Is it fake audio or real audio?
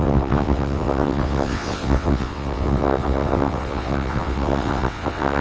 fake